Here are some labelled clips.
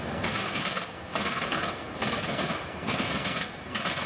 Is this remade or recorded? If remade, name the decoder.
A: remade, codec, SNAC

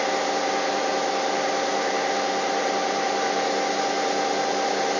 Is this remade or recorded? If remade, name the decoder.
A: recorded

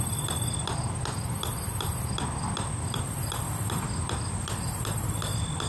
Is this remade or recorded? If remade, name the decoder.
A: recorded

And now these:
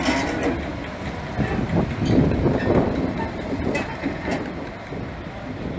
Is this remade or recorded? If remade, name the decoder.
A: recorded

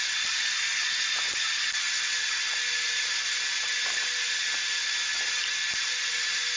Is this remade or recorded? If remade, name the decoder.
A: recorded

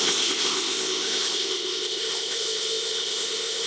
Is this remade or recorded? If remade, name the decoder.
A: remade, codec, ZipCodec